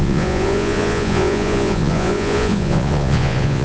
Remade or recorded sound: remade